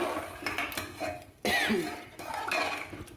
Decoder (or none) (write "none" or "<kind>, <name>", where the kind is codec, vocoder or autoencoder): none